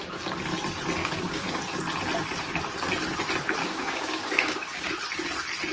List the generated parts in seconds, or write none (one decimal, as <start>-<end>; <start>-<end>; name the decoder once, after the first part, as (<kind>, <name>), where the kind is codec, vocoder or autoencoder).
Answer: 1.0-1.6 (codec, DAC); 3.6-4.9